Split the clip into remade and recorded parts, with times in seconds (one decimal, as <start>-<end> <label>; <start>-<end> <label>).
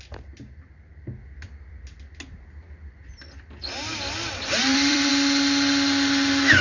0.0-3.9 recorded; 3.9-5.1 remade; 5.1-6.6 recorded